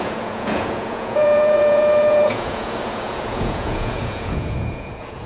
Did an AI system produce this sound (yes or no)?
yes